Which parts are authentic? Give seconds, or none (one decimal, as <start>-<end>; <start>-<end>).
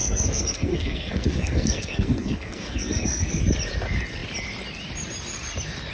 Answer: 3.4-5.9